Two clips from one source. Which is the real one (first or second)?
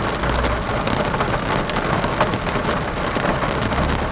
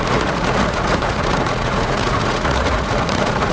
first